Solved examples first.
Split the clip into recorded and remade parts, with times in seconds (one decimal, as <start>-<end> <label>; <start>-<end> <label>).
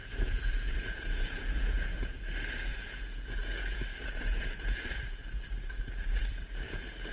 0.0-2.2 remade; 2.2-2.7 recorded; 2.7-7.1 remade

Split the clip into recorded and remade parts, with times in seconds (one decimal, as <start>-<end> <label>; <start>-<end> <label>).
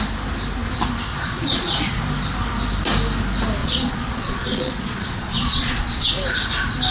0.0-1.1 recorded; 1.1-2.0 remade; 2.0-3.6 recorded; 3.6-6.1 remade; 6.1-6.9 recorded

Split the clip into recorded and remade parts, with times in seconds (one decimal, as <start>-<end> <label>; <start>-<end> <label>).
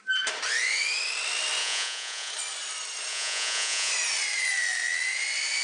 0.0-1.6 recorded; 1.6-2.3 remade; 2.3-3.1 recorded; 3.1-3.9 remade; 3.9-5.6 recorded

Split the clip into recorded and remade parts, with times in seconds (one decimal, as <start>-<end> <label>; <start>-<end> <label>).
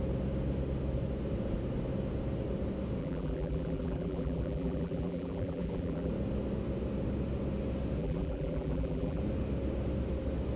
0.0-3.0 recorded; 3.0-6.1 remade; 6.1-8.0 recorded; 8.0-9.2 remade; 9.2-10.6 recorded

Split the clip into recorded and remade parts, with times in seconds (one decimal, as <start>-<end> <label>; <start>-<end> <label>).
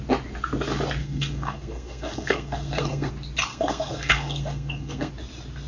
0.0-1.0 recorded; 1.0-3.1 remade; 3.1-3.5 recorded; 3.5-5.1 remade; 5.1-5.7 recorded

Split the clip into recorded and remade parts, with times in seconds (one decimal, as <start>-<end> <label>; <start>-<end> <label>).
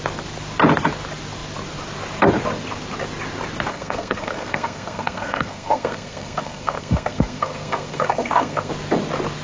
0.0-3.7 recorded; 3.7-8.7 remade; 8.7-9.4 recorded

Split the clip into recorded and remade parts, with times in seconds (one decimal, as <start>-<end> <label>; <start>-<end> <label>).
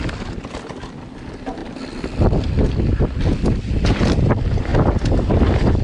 0.0-5.8 recorded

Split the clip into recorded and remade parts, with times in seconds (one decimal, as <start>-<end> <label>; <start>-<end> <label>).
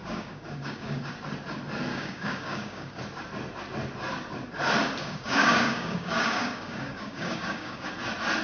0.0-1.1 remade; 1.1-1.9 recorded; 1.9-3.0 remade; 3.0-5.0 recorded; 5.0-7.9 remade; 7.9-8.4 recorded